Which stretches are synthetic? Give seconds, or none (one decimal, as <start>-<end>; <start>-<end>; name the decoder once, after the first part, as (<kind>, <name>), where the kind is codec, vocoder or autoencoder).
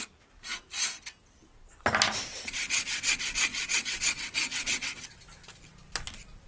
2.3-3.1 (vocoder, WaveNeXt); 3.5-5.2